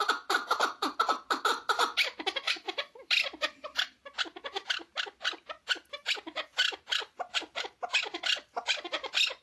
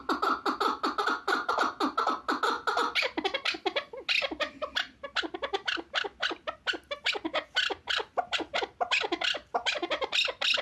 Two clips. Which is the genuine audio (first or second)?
second